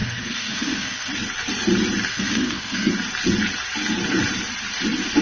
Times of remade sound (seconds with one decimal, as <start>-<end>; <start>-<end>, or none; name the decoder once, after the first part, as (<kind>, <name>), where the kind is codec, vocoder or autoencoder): 0.0-1.1 (codec, SNAC); 2.1-2.9